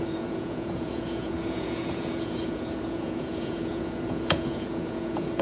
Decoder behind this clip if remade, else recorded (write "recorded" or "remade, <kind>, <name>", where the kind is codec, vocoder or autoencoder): remade, vocoder, Vocos